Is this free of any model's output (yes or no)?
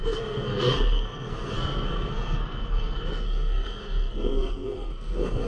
no